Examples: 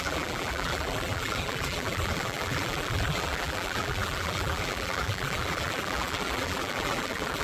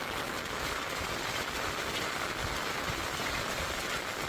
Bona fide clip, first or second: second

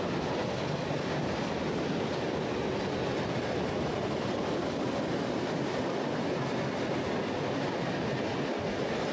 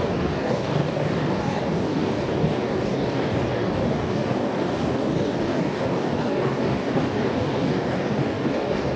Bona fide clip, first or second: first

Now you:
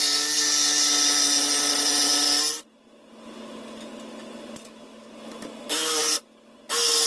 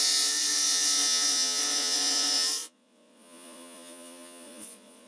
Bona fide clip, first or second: first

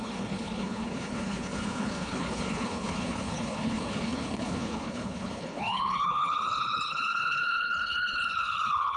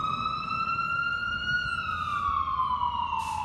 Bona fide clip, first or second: second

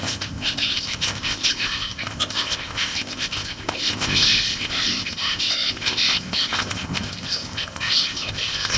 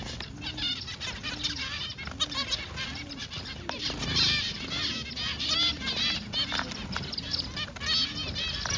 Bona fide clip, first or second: second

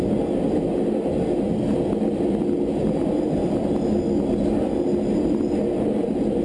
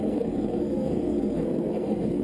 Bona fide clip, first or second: first